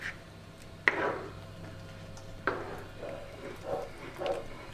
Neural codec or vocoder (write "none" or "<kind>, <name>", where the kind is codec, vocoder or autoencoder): none